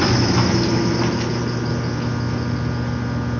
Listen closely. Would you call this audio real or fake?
real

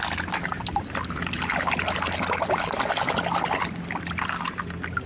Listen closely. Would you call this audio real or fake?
real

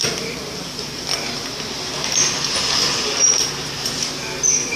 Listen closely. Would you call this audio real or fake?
real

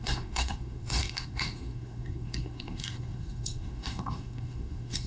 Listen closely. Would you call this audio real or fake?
fake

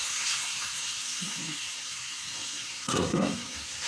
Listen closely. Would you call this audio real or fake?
fake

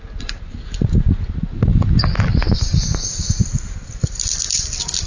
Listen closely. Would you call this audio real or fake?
real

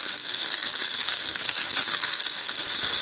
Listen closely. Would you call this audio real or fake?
fake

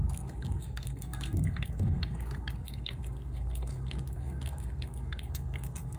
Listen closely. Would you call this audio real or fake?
fake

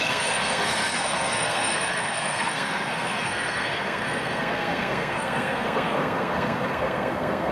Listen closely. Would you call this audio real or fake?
fake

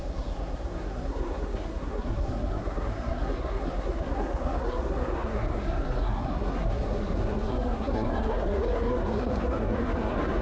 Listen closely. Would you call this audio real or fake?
fake